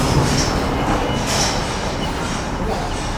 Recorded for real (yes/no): yes